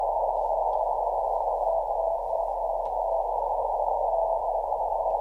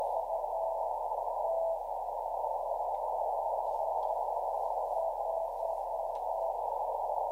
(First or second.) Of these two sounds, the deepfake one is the first